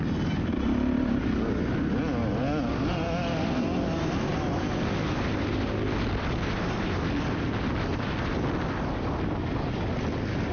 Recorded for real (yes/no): yes